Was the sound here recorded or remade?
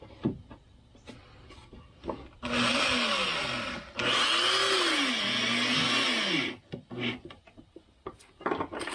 recorded